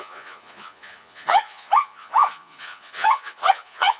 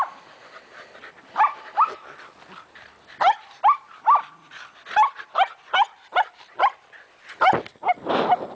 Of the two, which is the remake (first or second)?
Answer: first